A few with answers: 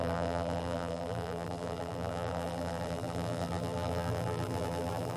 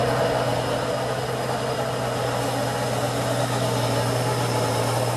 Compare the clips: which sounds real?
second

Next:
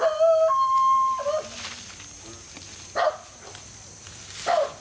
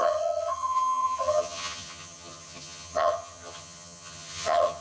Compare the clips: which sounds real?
first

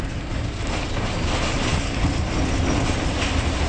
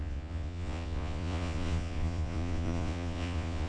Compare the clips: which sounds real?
first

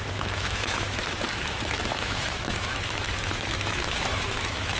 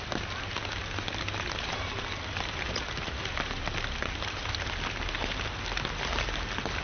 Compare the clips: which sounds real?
second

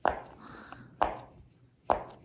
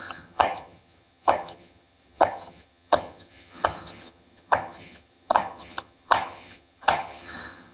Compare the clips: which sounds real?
first